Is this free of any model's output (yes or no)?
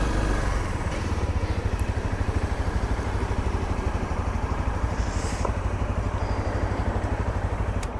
no